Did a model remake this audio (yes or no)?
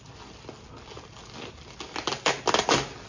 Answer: no